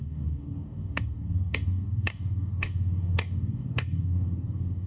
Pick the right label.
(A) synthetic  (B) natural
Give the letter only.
A